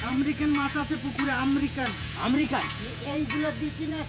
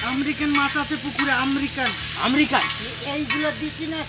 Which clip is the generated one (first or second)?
first